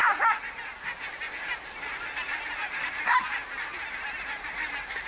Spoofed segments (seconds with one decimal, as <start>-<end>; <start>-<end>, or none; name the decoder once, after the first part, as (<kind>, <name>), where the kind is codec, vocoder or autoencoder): none

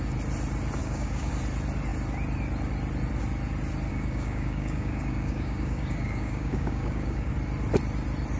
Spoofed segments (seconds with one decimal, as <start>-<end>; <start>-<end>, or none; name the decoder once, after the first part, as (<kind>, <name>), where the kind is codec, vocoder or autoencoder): 0.8-1.3 (codec, DAC); 3.9-7.3

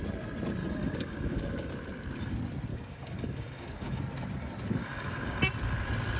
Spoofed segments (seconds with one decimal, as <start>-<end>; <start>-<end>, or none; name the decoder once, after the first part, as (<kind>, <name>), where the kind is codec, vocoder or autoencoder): 0.6-1.7 (codec, DAC); 2.7-4.0; 4.8-5.4

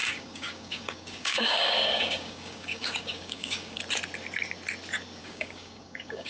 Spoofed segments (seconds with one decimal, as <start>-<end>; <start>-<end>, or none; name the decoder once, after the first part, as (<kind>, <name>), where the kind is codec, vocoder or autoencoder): 0.0-3.8 (codec, DAC); 5.2-6.3

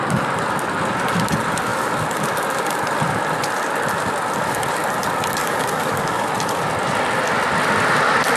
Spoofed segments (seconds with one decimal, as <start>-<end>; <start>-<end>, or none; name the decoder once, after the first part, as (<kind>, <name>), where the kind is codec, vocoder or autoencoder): 5.4-6.3 (codec, DAC)